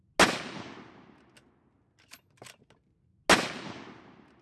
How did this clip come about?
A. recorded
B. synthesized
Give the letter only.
A